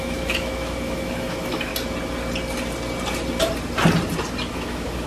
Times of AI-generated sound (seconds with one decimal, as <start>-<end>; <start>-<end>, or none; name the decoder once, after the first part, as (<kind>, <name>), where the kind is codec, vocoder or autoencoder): 0.0-1.7 (autoencoder, DAC-VAE); 4.5-5.1